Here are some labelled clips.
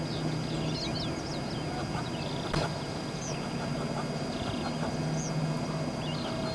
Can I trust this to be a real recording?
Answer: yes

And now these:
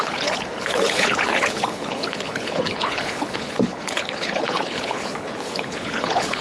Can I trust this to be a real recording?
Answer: no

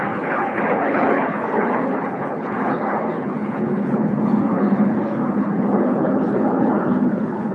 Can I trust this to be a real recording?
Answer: no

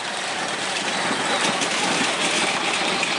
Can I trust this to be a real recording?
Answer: yes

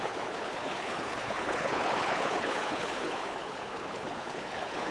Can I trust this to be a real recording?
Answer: no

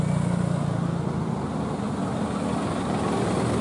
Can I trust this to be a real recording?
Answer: yes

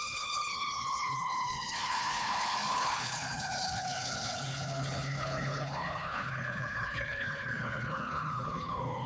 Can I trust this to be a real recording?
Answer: no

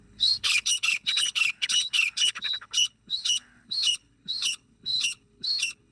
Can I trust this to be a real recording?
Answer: no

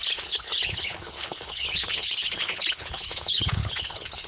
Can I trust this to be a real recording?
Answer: no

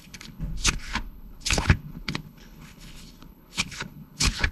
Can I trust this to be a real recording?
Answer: no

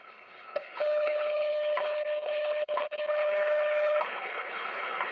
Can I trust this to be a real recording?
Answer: no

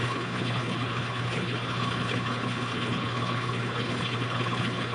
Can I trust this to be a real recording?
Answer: no